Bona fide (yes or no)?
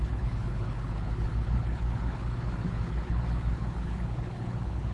no